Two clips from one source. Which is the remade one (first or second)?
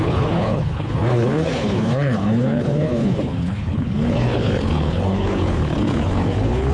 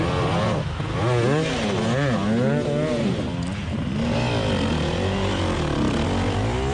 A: first